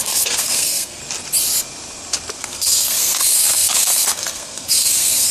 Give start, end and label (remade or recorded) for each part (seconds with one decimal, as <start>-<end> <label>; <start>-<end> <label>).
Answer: 0.0-1.0 remade; 1.0-2.4 recorded; 2.4-5.3 remade